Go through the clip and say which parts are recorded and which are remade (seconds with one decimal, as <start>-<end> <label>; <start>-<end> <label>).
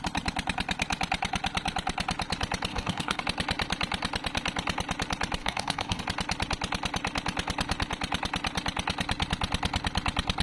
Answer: 0.0-2.7 recorded; 2.7-3.2 remade; 3.2-5.4 recorded; 5.4-6.0 remade; 6.0-10.4 recorded